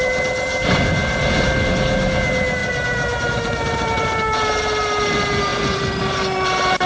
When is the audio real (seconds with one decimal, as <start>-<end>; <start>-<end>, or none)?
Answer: 0.0-2.6; 4.6-5.5; 6.0-6.9

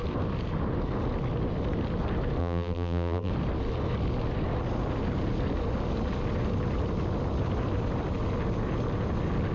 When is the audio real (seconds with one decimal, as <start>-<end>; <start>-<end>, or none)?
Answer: 0.0-2.4; 3.3-9.5

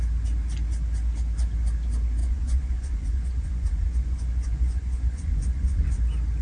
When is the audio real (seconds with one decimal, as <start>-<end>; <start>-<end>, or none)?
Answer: 0.0-2.2; 6.0-6.4

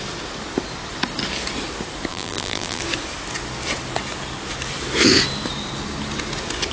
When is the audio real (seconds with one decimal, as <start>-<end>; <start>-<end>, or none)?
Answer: 0.0-2.1; 2.8-6.7

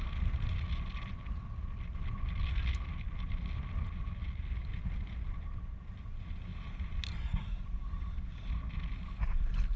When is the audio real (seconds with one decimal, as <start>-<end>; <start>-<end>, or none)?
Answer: 0.0-9.8

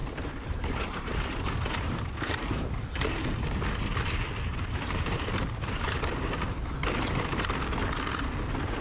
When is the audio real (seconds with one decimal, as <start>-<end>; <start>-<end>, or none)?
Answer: 2.8-4.5; 6.9-8.8